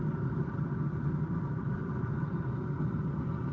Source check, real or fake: real